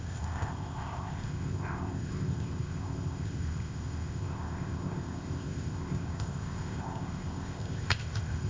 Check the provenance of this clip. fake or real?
fake